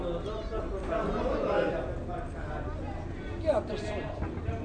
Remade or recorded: recorded